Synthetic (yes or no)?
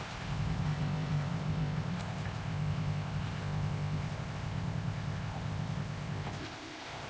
yes